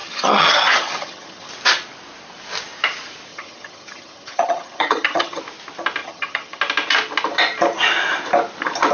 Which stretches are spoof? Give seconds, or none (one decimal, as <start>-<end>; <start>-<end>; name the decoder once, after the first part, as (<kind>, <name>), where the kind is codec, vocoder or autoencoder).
0.0-1.5 (vocoder, HiFi-GAN); 3.3-5.4; 6.0-6.6